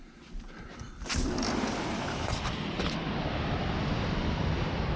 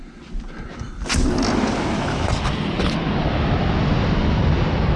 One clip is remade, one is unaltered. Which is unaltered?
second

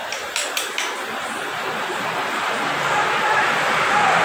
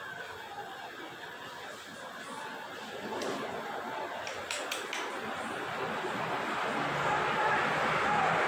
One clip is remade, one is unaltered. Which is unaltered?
second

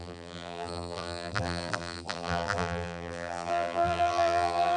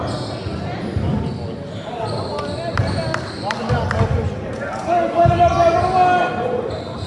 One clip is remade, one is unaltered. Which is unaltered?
second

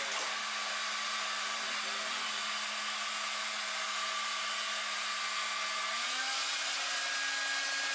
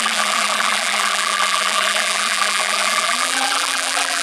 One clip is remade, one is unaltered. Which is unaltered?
first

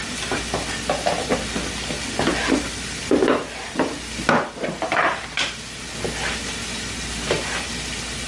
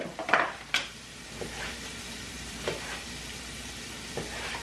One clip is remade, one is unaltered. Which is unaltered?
first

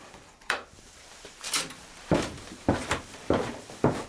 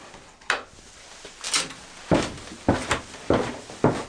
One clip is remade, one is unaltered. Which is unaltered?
second